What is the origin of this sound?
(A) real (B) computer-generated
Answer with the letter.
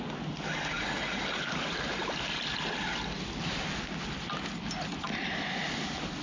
A